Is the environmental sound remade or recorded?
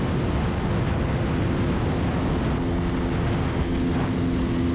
recorded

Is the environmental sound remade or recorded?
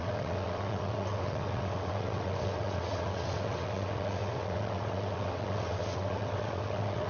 remade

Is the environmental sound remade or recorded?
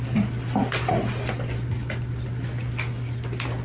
recorded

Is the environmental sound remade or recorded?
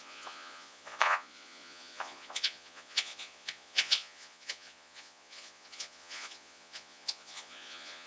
remade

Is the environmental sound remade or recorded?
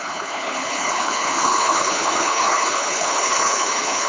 remade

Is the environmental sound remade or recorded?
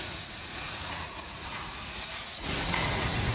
remade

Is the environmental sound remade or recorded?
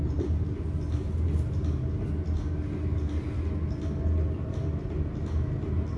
recorded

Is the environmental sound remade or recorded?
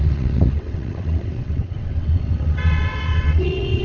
remade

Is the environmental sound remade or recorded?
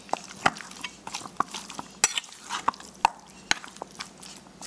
recorded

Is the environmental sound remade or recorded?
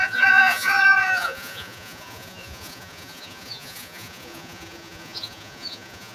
remade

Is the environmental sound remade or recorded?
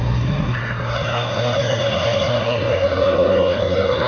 remade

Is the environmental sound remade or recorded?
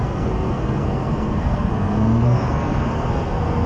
remade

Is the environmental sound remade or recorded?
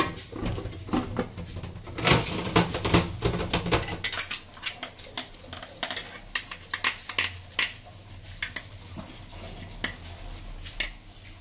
recorded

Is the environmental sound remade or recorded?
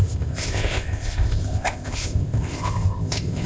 remade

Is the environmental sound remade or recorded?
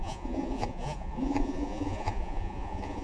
remade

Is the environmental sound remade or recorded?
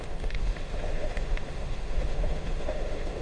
remade